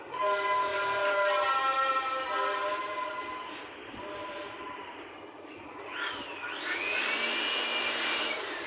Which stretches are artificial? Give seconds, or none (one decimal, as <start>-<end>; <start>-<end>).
0.7-3.1; 4.2-5.2; 7.7-8.7

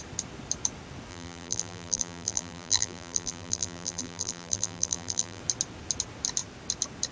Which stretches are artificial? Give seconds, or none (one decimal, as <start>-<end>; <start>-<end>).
1.1-5.4

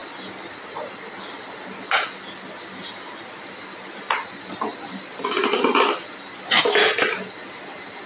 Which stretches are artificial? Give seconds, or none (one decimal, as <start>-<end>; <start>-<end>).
none